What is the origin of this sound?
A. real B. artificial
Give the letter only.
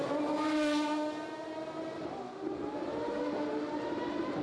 A